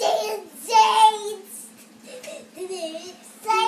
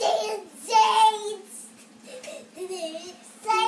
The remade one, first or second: second